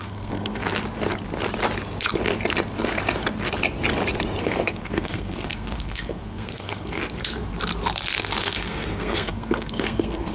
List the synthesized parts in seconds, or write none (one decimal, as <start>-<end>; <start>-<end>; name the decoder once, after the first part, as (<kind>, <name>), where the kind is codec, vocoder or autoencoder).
0.0-0.6 (codec, SNAC); 4.4-7.0; 8.4-10.3